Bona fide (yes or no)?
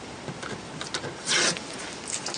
yes